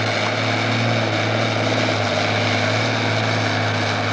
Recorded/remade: recorded